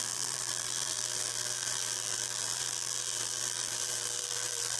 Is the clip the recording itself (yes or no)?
no